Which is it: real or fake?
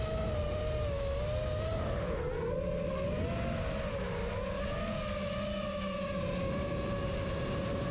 real